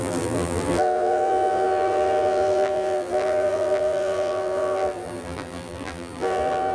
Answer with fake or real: fake